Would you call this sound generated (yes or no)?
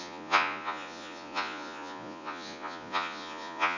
yes